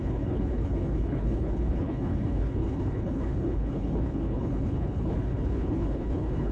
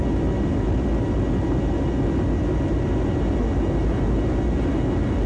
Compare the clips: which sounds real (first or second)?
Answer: second